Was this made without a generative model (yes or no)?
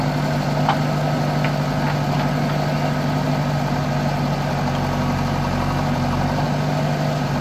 yes